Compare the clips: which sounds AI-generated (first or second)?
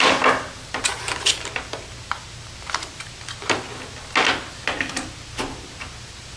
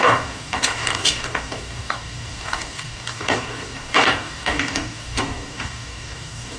second